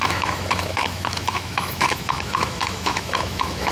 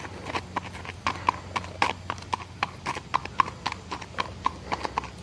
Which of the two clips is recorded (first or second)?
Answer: second